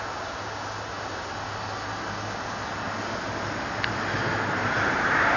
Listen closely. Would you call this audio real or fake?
real